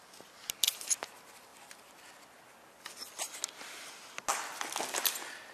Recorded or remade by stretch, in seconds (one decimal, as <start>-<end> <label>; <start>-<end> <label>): 0.0-5.5 recorded